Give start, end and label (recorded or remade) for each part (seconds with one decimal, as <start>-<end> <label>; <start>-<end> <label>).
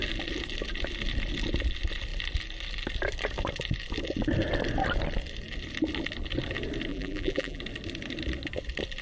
0.0-6.9 recorded; 6.9-7.6 remade; 7.6-9.0 recorded